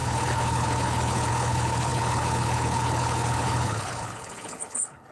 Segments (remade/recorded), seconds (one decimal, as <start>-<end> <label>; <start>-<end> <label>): 0.0-5.1 remade